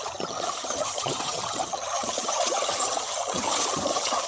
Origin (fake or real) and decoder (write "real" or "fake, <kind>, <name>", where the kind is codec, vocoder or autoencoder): fake, vocoder, HiFi-GAN